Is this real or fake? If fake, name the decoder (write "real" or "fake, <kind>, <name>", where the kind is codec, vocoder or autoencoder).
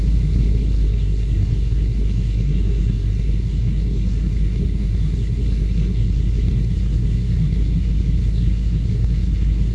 fake, codec, SNAC